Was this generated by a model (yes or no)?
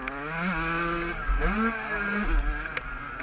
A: no